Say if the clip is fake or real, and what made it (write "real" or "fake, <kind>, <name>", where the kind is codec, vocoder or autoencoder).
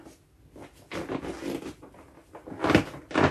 real